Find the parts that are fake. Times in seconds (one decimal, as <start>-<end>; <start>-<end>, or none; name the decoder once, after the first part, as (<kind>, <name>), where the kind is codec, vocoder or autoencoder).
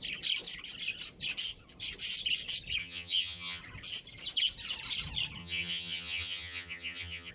2.8-3.6 (vocoder, HiFi-GAN); 5.4-7.3